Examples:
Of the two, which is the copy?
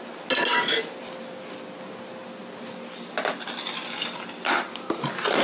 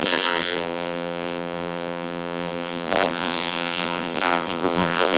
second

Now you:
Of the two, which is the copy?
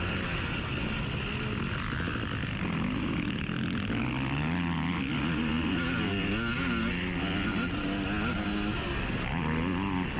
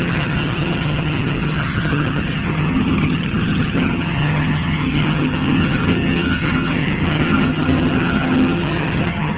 second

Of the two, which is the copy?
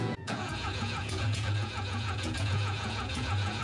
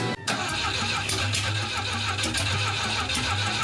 first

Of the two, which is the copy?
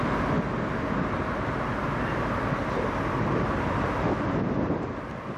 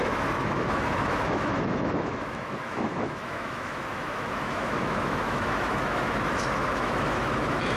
second